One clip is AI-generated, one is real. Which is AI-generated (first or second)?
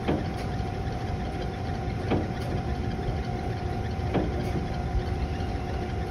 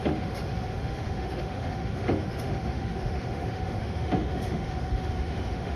second